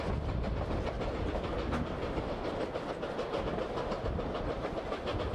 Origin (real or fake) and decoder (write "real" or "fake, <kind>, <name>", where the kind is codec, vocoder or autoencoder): real